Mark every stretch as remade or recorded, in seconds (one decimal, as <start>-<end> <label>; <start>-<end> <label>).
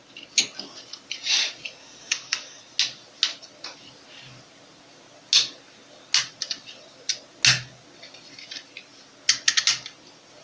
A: 0.0-1.8 recorded; 1.8-2.6 remade; 2.6-10.4 recorded